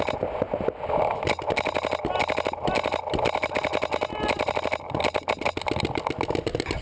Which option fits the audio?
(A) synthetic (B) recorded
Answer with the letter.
B